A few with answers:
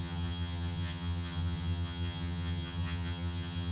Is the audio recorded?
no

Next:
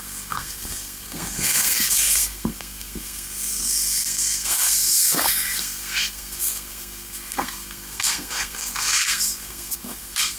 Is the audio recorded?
no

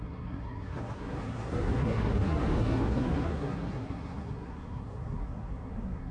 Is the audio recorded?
no